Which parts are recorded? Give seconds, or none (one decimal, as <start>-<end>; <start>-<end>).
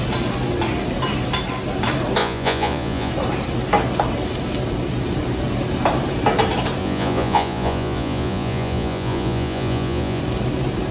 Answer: 0.0-2.2; 3.1-6.8; 10.2-10.9